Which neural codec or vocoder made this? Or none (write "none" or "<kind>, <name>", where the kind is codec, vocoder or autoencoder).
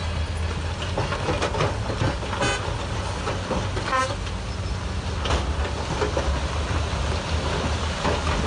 none